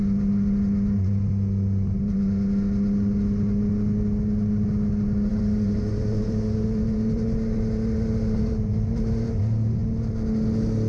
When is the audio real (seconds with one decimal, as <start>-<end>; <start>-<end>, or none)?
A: 0.0-5.3; 9.4-10.9